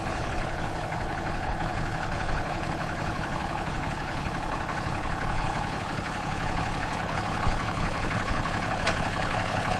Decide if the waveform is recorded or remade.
remade